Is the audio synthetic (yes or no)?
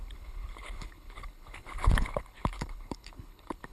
yes